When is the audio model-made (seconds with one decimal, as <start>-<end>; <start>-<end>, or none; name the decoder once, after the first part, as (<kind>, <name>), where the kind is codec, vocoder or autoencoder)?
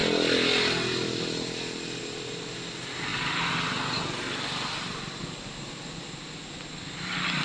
none